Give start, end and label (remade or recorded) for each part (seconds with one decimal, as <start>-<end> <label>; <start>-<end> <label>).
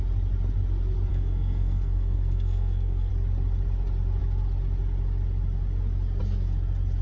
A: 0.0-1.1 recorded; 1.1-3.1 remade; 3.1-7.0 recorded